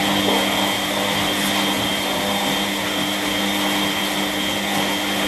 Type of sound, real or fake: real